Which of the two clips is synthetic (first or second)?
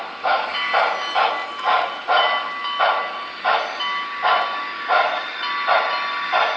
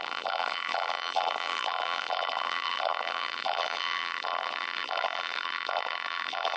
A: second